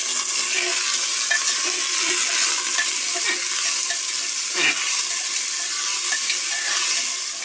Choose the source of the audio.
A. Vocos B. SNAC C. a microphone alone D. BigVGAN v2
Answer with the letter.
C